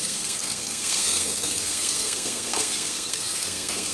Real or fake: fake